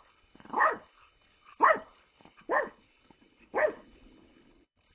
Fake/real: fake